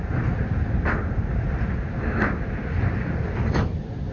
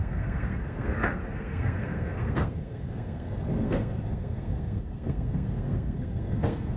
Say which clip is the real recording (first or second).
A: first